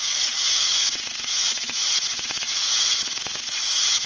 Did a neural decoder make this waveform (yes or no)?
yes